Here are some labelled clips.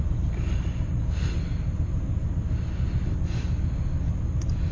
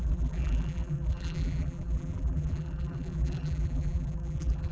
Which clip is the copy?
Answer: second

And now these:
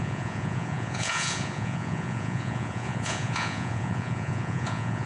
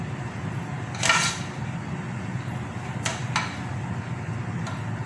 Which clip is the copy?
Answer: first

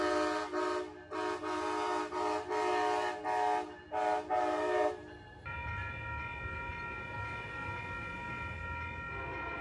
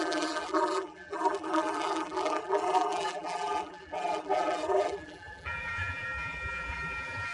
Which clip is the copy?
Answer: second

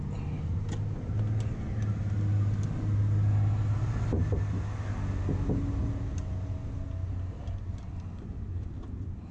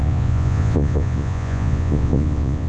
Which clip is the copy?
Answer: second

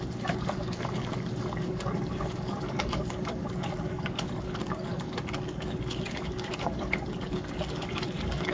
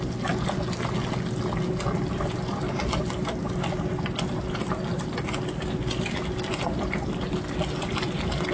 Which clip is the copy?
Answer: first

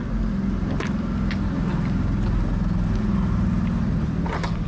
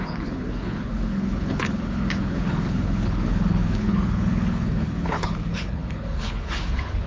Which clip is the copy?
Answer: second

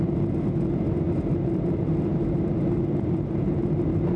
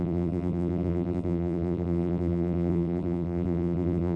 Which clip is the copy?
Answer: second